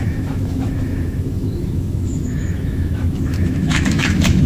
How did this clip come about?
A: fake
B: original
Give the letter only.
A